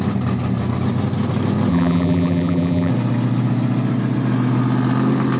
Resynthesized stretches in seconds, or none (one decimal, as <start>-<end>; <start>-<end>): 1.7-2.9